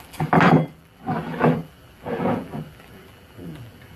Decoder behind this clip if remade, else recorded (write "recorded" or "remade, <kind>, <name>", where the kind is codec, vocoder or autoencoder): remade, vocoder, BigVGAN v2